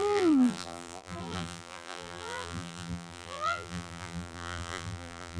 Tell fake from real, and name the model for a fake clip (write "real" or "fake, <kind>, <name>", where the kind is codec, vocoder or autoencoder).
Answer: fake, vocoder, BigVGAN v2